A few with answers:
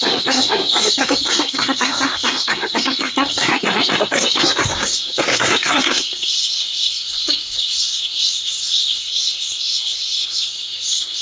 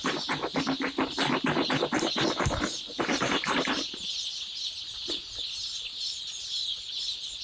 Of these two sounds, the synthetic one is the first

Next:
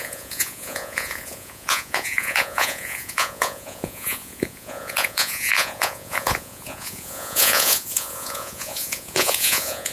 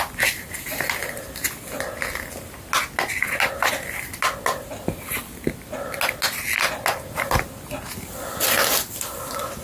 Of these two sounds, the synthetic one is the first